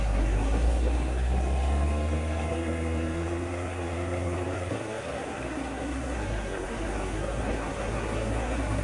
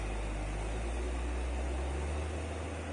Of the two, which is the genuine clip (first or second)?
second